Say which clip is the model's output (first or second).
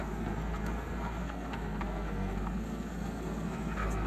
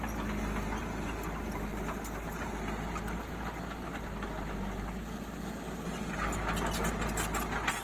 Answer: first